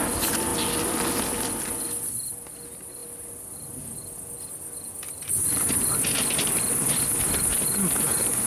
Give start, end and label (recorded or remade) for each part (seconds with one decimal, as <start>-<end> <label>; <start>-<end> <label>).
0.0-8.5 recorded

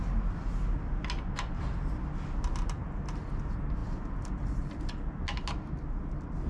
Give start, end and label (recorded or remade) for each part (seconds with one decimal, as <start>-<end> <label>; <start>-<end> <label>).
0.0-3.8 recorded; 3.8-5.1 remade; 5.1-6.5 recorded

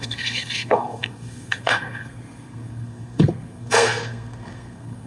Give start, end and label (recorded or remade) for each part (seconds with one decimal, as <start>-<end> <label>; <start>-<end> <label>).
0.0-5.1 remade

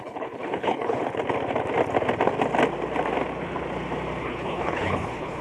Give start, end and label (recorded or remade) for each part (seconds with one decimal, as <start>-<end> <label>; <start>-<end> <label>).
0.0-1.0 remade; 1.0-4.2 recorded; 4.2-5.4 remade

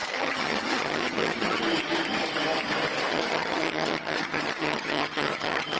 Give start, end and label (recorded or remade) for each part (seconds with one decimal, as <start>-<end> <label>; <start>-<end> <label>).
0.0-1.6 remade; 1.6-3.1 recorded; 3.1-5.8 remade